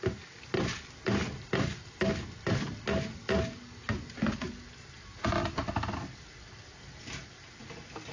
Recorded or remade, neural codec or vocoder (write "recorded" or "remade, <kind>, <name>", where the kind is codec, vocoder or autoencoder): recorded